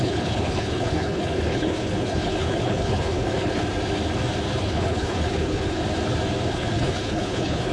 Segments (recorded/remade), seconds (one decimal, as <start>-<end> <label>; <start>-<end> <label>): 0.0-3.6 remade; 3.6-4.6 recorded; 4.6-5.8 remade; 5.8-6.5 recorded; 6.5-7.7 remade